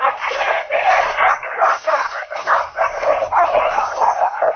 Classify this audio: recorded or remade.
remade